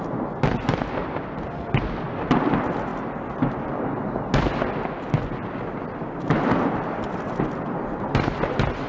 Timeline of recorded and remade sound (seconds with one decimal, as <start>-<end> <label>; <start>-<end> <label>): 0.0-8.9 recorded